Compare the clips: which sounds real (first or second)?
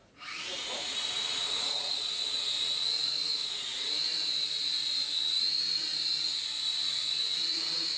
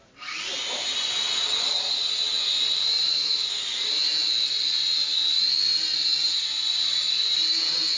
second